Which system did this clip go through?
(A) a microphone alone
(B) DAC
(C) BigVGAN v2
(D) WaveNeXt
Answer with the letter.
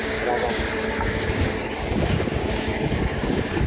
B